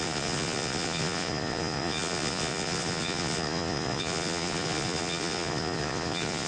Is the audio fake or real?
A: fake